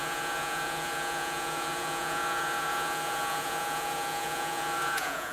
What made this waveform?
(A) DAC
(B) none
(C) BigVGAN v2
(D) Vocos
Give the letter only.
D